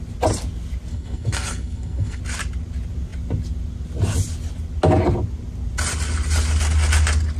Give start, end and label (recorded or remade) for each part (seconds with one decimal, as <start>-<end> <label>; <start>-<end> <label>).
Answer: 0.0-0.9 recorded; 0.9-2.2 remade; 2.2-7.4 recorded